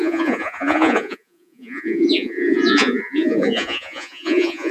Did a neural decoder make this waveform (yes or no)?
yes